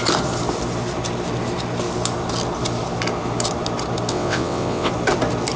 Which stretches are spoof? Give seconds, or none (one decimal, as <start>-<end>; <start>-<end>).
4.1-4.9